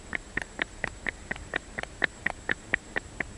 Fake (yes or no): yes